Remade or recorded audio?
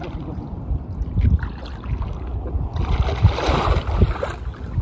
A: recorded